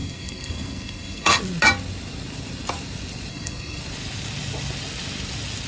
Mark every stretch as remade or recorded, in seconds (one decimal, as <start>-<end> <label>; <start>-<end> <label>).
0.0-1.4 remade; 1.4-3.3 recorded; 3.3-3.8 remade; 3.8-5.7 recorded